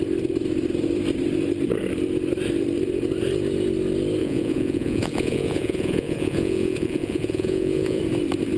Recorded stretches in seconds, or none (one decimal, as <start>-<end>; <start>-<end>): 0.0-4.2; 8.0-8.6